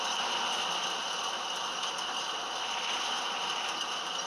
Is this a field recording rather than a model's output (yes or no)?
yes